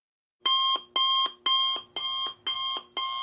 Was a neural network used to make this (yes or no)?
no